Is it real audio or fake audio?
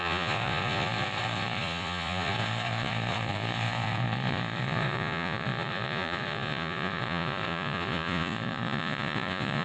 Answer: fake